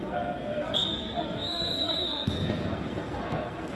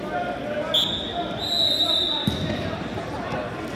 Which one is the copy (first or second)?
first